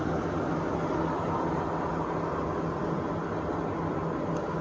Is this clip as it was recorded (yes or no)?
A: yes